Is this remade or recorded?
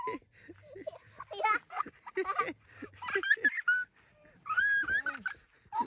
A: recorded